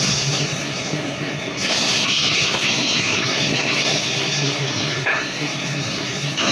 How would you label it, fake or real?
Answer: fake